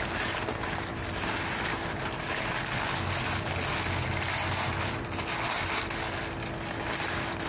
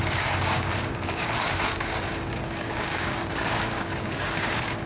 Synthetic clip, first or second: second